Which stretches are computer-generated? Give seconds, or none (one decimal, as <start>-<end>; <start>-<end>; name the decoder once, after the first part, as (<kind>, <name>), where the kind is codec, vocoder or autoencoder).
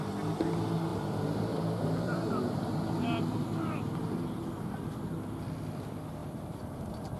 0.9-5.2 (vocoder, BigVGAN v2); 6.2-7.2